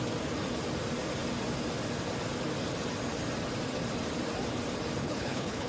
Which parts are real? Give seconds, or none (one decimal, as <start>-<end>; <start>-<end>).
0.0-5.0